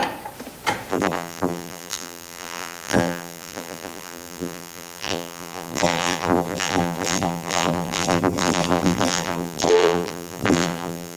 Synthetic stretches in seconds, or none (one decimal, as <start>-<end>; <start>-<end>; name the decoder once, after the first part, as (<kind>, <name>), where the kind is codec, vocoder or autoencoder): 0.9-11.2 (vocoder, BigVGAN v2)